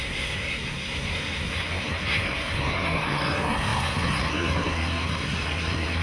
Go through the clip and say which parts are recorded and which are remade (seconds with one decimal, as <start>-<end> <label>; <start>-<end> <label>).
0.0-6.0 remade